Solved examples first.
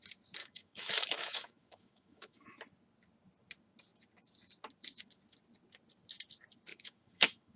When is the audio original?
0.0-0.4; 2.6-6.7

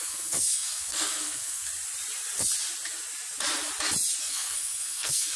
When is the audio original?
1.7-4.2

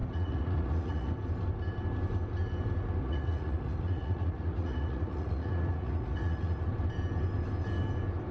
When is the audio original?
1.1-3.0; 6.6-8.3

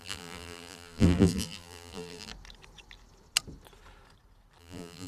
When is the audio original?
2.3-4.6

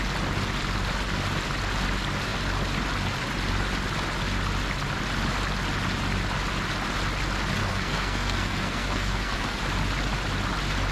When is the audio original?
0.0-7.6; 9.6-10.9